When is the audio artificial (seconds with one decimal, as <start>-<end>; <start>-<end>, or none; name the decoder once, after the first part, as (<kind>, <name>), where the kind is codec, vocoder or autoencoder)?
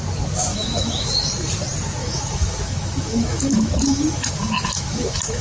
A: 0.5-1.1 (autoencoder, DAC-VAE); 2.0-5.4